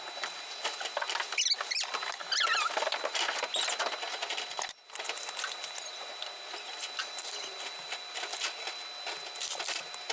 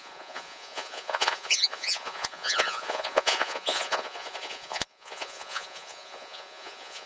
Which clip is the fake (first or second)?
second